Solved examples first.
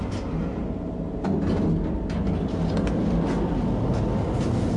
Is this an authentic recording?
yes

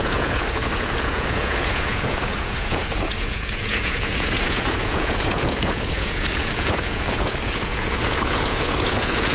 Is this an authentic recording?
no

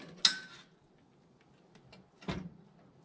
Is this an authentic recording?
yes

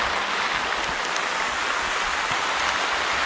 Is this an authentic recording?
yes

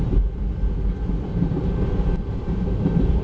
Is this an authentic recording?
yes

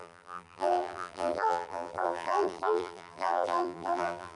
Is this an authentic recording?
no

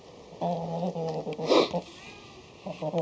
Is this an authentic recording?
yes